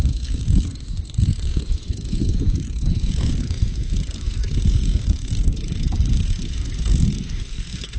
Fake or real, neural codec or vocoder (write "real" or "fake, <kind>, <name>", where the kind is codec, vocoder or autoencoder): fake, codec, SNAC